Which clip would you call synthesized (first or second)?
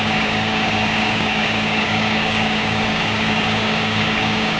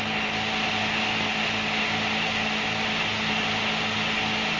first